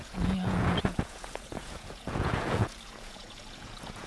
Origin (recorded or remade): remade